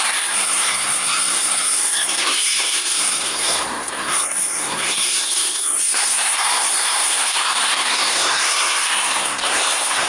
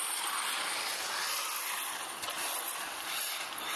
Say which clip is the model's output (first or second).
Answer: first